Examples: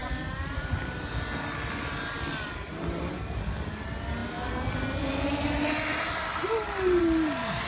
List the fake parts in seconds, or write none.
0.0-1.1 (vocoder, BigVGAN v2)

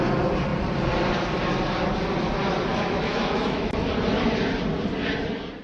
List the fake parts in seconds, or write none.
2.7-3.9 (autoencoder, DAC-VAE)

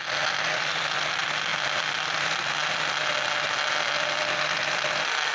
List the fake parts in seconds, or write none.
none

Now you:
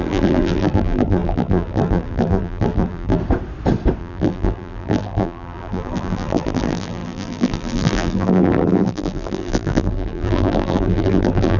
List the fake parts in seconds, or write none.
0.0-3.2 (vocoder, BigVGAN v2); 4.0-11.6